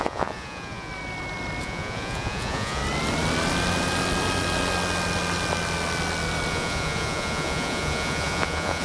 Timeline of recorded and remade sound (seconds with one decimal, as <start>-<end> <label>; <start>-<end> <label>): 0.0-0.9 remade; 0.9-1.6 recorded; 1.6-2.8 remade; 2.8-6.5 recorded; 6.5-8.8 remade